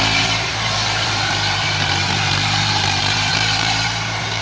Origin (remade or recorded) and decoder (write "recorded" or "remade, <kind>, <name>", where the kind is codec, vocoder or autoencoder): remade, vocoder, BigVGAN v2